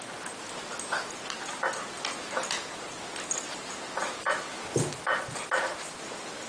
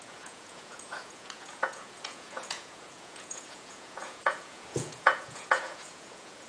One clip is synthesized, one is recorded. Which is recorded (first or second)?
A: first